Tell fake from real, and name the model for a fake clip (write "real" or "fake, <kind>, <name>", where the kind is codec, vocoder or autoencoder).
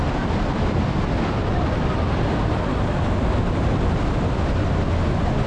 real